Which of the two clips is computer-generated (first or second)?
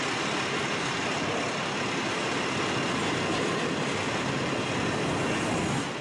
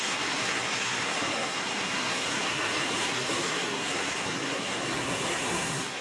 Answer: second